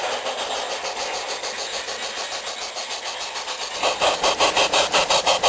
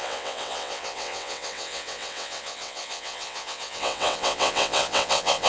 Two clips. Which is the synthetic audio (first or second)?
second